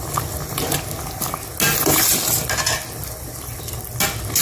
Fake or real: real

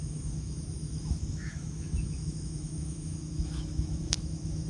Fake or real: fake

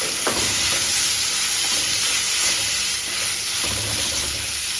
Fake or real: real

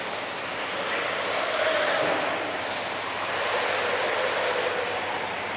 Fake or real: real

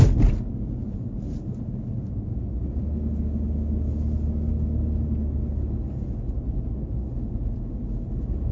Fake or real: real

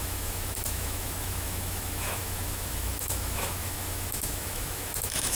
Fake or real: fake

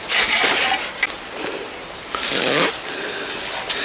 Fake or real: real